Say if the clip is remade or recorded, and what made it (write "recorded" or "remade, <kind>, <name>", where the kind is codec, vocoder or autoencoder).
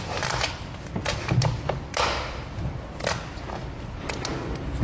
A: recorded